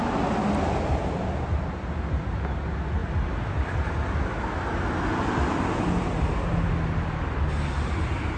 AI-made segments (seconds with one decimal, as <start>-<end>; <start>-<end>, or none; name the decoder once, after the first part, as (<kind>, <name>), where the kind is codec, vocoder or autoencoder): none